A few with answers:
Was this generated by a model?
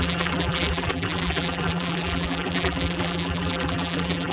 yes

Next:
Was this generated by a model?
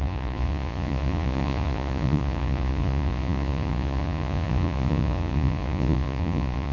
yes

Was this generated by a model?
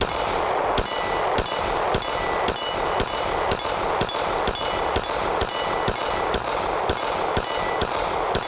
no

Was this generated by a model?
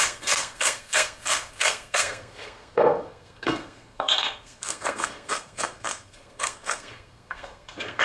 yes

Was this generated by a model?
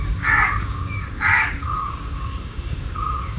yes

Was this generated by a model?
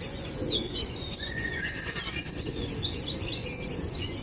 yes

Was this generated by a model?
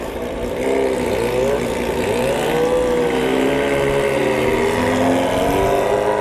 no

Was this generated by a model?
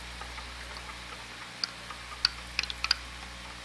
no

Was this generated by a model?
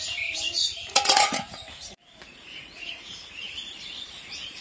yes